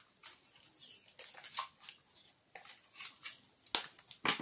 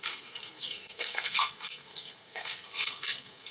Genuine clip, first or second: first